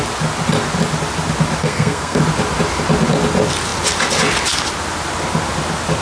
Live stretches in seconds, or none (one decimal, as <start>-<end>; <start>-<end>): 0.0-1.6; 2.2-6.0